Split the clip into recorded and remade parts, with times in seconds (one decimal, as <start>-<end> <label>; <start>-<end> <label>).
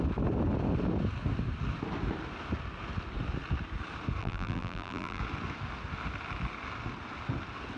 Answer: 0.0-4.2 recorded; 4.2-5.2 remade; 5.2-7.8 recorded